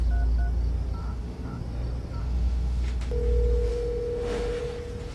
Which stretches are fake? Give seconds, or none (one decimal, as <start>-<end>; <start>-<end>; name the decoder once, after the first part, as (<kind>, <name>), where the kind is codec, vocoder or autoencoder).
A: 1.0-1.6 (autoencoder, DAC-VAE); 2.2-3.1; 3.7-4.6